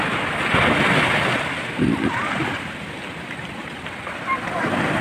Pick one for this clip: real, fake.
real